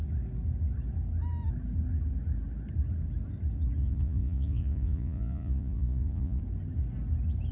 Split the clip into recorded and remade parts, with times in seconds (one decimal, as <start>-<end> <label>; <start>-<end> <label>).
0.0-3.8 recorded; 3.8-6.4 remade; 6.4-7.5 recorded